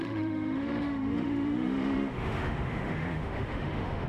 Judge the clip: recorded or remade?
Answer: remade